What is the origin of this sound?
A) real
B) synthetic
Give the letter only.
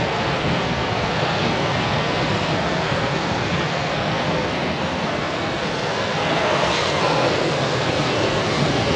B